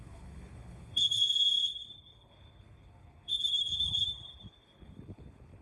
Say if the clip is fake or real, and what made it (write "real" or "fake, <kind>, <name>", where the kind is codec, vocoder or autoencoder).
fake, codec, HILCodec